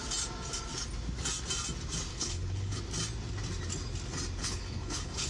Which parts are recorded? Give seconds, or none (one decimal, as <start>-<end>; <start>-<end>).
0.0-2.1; 2.8-4.4